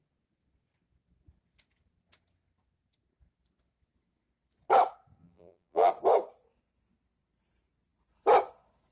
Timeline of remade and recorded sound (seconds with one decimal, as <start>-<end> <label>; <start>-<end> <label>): 0.0-5.2 recorded; 5.2-5.9 remade; 5.9-8.9 recorded